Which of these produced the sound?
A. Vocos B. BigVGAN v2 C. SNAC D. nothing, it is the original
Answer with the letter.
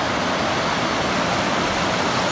D